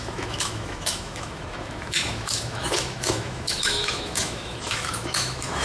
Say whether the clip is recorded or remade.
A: remade